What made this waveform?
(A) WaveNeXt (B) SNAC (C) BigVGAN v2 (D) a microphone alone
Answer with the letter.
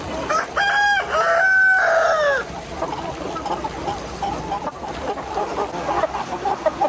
D